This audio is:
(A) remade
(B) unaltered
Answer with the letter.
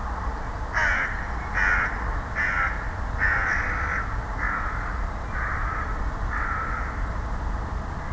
B